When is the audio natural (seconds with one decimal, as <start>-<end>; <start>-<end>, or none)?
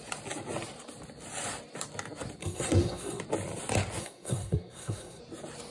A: 0.0-2.4; 3.2-4.0; 5.2-5.7